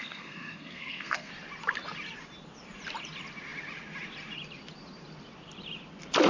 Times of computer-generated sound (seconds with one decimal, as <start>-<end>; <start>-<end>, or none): 0.0-1.3